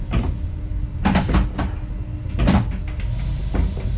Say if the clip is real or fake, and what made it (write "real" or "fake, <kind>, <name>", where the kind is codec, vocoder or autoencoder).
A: real